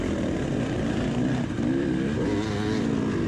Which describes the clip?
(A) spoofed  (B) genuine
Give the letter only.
B